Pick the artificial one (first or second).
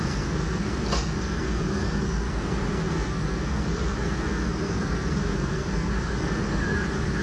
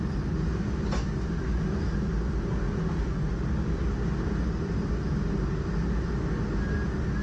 first